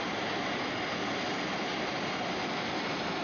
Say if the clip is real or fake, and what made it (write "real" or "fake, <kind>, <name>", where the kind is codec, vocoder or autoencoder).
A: real